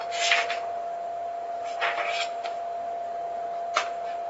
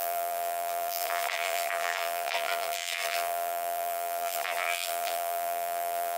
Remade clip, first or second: second